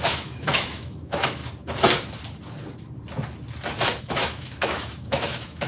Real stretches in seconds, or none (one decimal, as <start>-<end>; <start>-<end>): 1.4-4.0